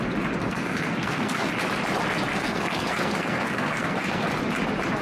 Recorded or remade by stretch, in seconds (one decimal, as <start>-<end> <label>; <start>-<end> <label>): 0.0-0.4 recorded; 0.4-1.5 remade; 1.5-2.3 recorded; 2.3-4.3 remade; 4.3-5.0 recorded